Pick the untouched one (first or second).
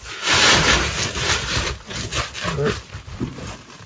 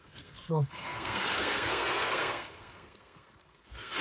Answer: first